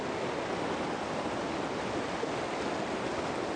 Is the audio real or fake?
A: real